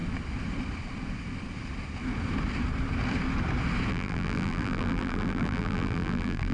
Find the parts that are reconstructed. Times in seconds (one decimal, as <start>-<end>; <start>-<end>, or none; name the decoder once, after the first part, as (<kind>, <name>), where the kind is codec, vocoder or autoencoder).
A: 3.9-6.5 (vocoder, BigVGAN v2)